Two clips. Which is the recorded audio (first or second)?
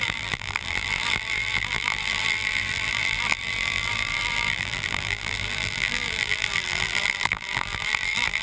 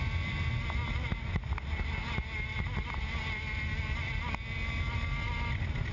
second